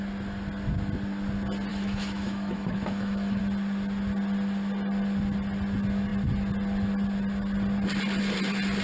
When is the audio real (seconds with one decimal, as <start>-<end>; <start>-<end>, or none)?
0.0-1.7; 3.4-8.8